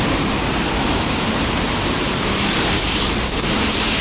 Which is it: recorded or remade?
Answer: remade